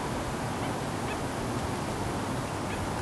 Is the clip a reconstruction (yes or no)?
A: no